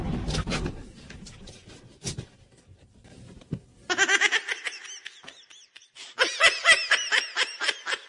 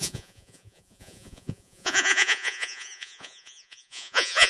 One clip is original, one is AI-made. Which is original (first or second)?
first